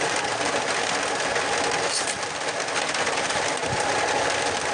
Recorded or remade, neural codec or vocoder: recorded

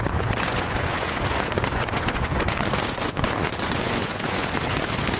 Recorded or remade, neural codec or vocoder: remade, vocoder, Vocos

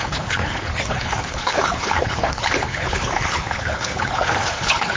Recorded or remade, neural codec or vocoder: remade, codec, HILCodec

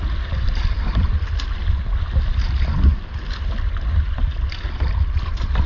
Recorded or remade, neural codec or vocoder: recorded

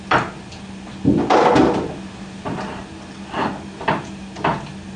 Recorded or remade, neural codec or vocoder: recorded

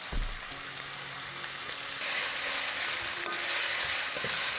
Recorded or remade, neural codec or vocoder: recorded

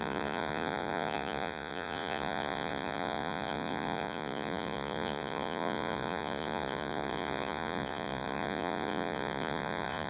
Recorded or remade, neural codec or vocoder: remade, vocoder, Vocos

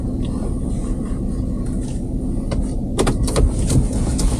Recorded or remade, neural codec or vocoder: recorded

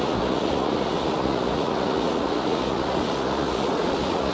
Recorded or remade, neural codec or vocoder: remade, vocoder, Vocos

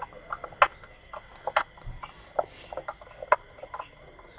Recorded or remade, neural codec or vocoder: recorded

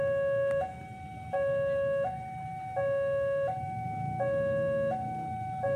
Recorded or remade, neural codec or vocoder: recorded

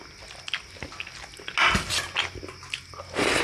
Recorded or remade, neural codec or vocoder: recorded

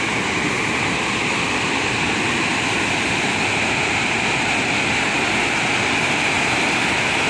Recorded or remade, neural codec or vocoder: recorded